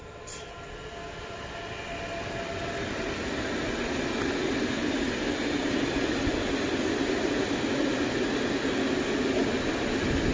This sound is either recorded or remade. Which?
recorded